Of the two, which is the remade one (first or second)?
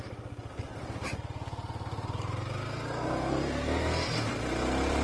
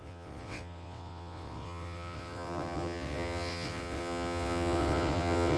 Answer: second